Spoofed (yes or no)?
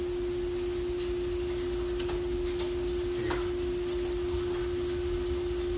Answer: no